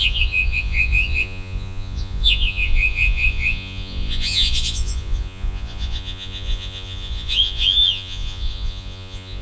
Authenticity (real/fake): fake